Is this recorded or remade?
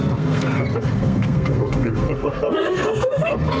remade